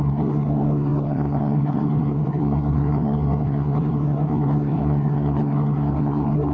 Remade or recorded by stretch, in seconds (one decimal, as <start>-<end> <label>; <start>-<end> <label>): 0.0-6.5 remade